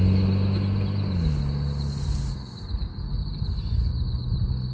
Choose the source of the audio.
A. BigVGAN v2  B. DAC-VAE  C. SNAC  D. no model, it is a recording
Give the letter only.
D